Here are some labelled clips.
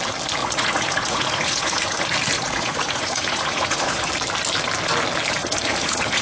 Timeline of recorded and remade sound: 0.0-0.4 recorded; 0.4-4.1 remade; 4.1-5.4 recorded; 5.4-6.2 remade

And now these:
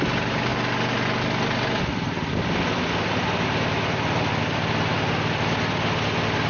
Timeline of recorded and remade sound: 0.0-6.5 recorded

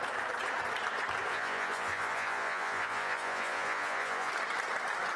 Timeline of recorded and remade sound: 0.0-1.3 recorded; 1.3-4.3 remade; 4.3-5.2 recorded

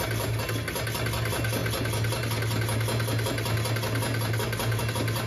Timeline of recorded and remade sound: 0.0-5.3 recorded

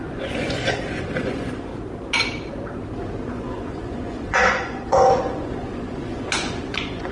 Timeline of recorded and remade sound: 0.0-1.7 remade; 1.7-3.3 recorded; 3.3-7.1 remade